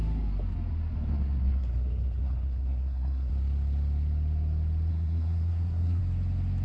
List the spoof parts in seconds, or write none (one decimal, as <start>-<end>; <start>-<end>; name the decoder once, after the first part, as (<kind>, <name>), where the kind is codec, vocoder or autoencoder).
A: 1.1-3.3 (codec, SNAC); 4.9-6.0